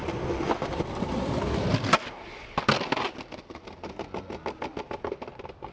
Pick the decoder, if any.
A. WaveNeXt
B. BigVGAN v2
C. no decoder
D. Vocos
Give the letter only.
C